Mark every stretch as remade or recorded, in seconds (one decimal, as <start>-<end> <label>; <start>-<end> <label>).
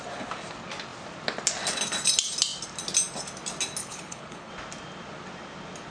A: 0.0-3.8 recorded; 3.8-4.5 remade; 4.5-5.9 recorded